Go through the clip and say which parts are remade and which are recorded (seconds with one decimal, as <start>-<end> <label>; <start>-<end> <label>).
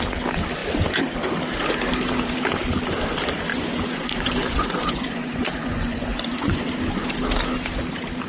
0.0-3.5 recorded; 3.5-6.7 remade; 6.7-8.3 recorded